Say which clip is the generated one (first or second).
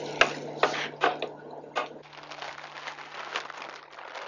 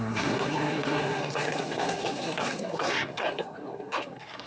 second